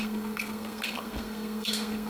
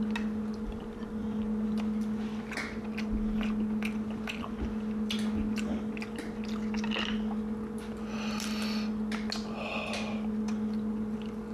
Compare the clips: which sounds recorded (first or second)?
second